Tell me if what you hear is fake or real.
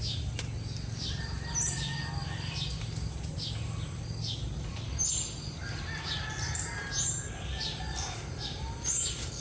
real